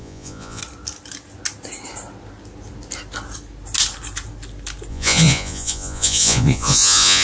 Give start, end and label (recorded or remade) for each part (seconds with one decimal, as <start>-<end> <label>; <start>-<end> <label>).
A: 0.0-0.6 remade; 0.6-4.9 recorded; 4.9-7.2 remade